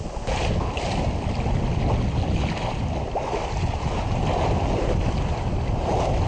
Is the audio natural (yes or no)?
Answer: yes